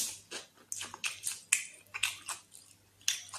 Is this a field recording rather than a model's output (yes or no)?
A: yes